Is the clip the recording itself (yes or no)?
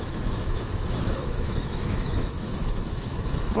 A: no